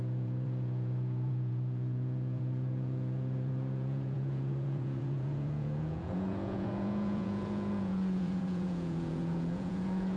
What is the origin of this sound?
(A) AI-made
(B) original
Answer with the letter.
A